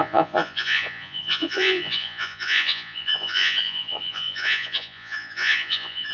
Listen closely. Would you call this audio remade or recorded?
remade